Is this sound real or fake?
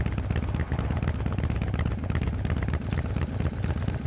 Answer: real